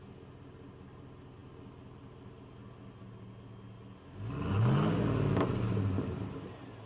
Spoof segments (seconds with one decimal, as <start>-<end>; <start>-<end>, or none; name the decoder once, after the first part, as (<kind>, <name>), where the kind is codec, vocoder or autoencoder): none